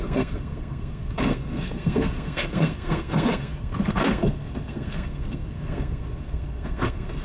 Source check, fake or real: fake